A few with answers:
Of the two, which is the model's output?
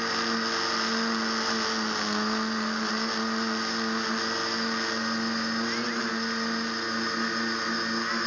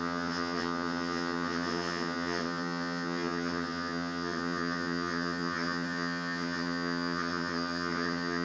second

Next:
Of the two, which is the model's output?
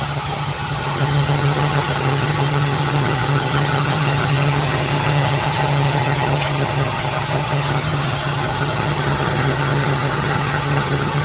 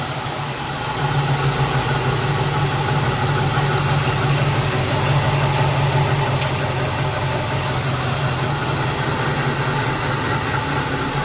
first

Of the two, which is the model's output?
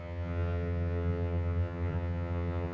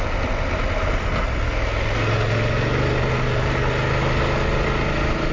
first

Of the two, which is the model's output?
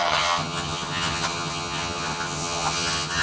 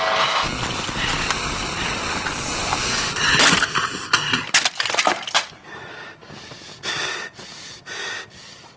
first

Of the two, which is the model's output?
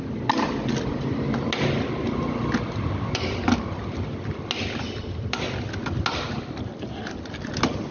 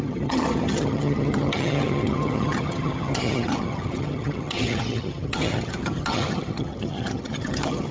second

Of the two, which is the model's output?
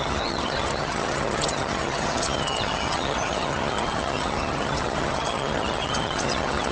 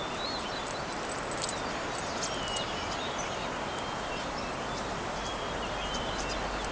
first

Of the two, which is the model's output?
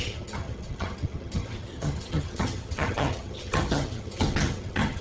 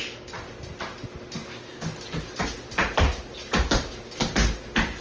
first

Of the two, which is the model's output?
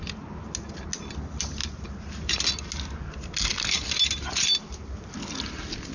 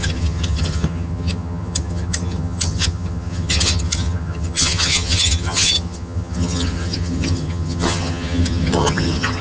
second